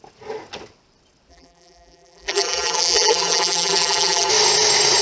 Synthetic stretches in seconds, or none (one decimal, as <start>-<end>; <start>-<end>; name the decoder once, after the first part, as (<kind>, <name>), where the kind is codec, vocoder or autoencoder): 1.3-4.3 (vocoder, BigVGAN v2)